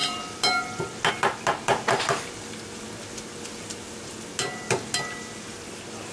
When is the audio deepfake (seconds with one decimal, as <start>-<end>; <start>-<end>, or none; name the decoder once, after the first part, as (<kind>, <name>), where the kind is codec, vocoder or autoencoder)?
none